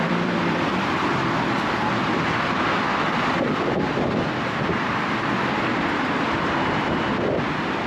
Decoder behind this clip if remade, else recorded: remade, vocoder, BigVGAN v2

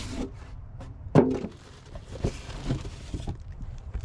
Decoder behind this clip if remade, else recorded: remade, vocoder, BigVGAN v2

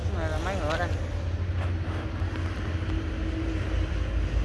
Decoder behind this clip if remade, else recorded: recorded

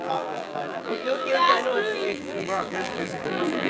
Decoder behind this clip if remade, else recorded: remade, vocoder, BigVGAN v2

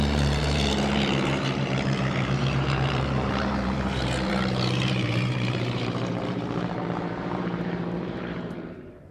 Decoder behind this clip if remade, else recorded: remade, vocoder, BigVGAN v2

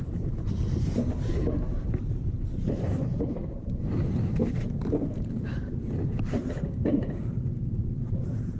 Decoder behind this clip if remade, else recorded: remade, vocoder, BigVGAN v2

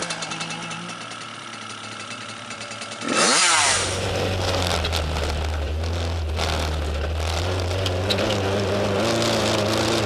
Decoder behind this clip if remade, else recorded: recorded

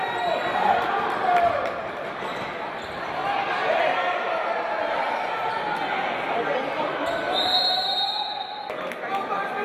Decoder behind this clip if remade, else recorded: recorded